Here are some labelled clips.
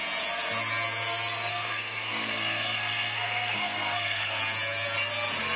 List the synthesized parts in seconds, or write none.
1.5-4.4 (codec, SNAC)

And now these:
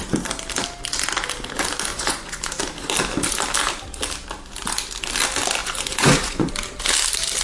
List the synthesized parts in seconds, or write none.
1.9-2.5 (vocoder, Vocos); 5.6-6.5